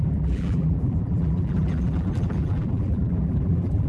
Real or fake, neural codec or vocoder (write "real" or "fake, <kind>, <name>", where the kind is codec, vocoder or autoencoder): fake, vocoder, BigVGAN v2